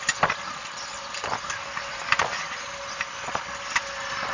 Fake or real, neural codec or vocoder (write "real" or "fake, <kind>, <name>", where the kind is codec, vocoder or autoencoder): real